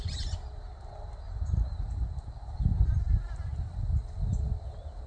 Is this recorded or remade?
recorded